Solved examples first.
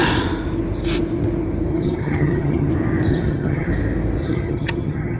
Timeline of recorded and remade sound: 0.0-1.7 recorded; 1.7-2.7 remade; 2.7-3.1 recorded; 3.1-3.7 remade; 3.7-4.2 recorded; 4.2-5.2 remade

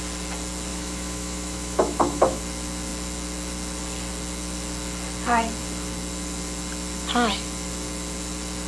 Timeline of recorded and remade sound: 0.0-0.7 recorded; 0.7-2.4 remade; 2.4-8.7 recorded

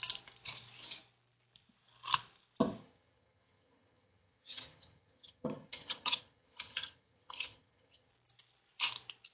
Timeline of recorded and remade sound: 0.0-2.8 recorded; 2.8-8.1 remade; 8.1-9.3 recorded